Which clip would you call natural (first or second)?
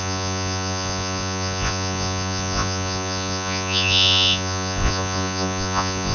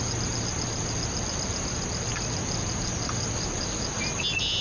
second